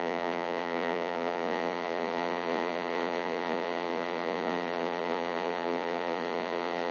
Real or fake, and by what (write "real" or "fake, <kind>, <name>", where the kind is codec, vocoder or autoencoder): fake, vocoder, Vocos